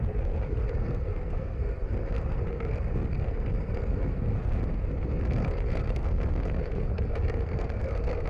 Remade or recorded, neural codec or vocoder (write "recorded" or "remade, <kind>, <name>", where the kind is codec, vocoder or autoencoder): remade, codec, SNAC